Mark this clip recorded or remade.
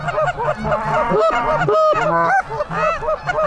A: recorded